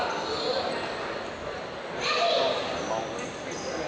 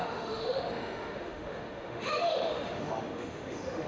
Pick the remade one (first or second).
second